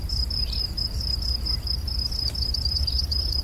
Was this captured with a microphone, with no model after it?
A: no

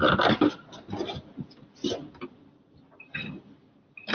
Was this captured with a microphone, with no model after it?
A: yes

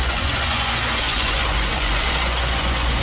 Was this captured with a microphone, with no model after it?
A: no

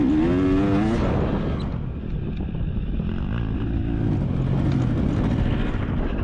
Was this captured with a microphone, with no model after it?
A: yes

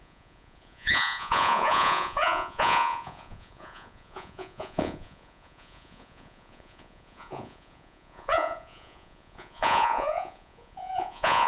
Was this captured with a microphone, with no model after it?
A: no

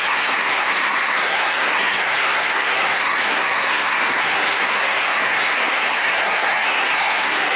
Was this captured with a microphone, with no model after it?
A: no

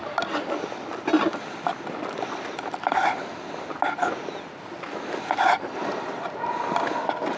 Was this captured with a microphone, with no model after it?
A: yes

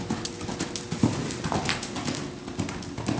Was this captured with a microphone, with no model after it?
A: yes